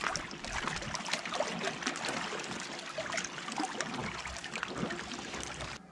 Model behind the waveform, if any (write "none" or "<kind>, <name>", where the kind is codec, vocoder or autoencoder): none